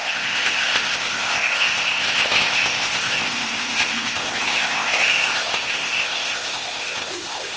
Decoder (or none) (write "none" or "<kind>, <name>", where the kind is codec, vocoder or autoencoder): codec, ZipCodec